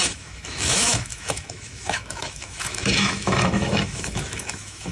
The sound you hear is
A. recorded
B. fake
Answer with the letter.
B